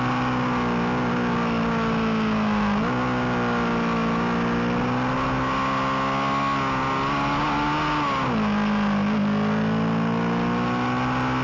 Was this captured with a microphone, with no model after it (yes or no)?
yes